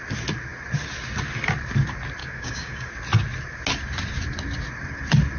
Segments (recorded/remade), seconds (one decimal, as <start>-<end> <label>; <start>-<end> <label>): 0.0-2.2 recorded; 2.2-2.9 remade; 2.9-5.4 recorded